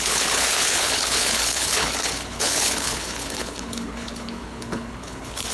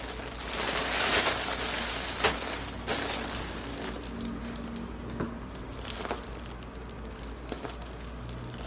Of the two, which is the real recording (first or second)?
second